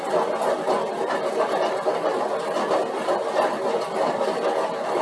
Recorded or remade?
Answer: remade